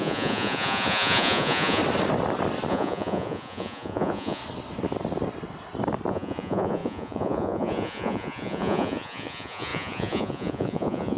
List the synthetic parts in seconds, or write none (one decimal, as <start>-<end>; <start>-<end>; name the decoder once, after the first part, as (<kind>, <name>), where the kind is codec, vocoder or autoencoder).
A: 0.0-1.8 (vocoder, Vocos); 2.7-4.4; 6.1-11.2